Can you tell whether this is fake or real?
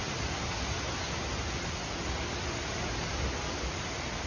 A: real